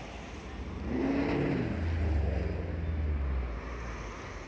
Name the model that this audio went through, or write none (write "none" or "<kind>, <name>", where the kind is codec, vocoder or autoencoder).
none